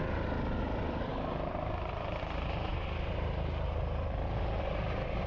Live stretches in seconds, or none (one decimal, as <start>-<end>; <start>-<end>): 0.0-5.3

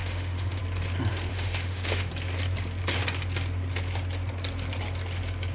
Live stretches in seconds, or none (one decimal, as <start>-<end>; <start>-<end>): 0.6-1.3; 2.1-5.5

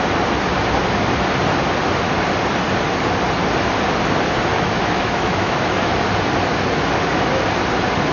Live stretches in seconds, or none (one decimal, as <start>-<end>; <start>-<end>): 0.0-4.5; 5.9-8.1

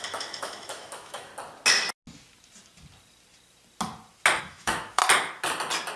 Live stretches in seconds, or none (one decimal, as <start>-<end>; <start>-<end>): 1.3-4.4; 5.0-6.0